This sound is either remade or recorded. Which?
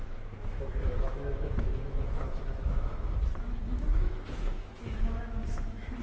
remade